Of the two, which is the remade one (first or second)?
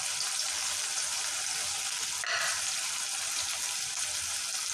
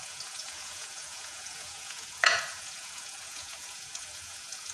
second